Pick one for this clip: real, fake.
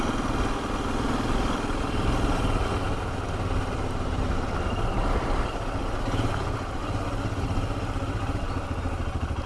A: real